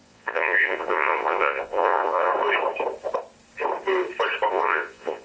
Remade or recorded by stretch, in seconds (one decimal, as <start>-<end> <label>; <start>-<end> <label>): 0.0-2.3 remade; 2.3-4.5 recorded; 4.5-5.2 remade

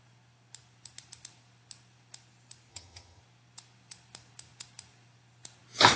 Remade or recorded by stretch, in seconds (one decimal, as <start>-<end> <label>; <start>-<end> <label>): 0.0-2.7 recorded; 2.7-3.2 remade; 3.2-6.0 recorded

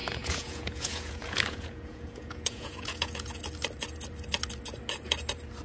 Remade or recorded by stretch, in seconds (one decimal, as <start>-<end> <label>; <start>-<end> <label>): 0.0-3.4 remade; 3.4-5.6 recorded

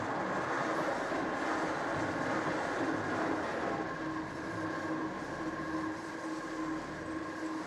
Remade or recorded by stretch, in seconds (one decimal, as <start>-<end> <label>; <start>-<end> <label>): 0.0-7.7 recorded